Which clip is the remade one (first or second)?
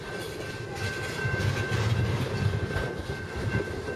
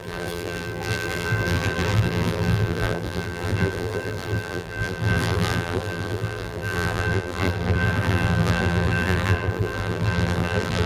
second